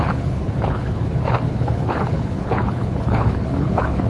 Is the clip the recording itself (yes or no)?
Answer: no